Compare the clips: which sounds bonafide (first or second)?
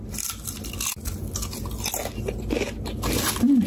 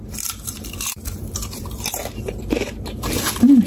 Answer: first